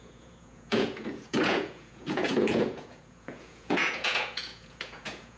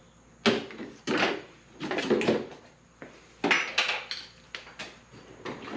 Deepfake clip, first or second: first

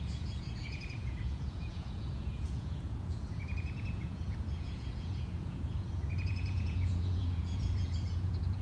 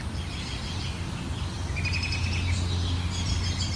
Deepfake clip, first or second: first